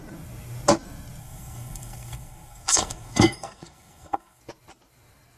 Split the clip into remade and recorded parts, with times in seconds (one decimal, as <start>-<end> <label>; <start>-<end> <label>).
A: 0.0-1.2 recorded; 1.2-4.4 remade; 4.4-5.4 recorded